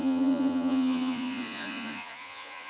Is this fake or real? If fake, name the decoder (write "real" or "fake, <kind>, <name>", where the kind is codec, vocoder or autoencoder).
fake, vocoder, Vocos